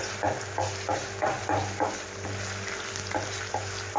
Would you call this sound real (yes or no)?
yes